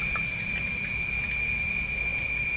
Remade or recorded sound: recorded